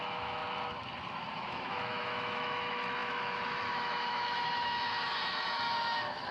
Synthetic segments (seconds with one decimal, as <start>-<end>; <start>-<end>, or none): 0.0-0.4; 1.3-6.3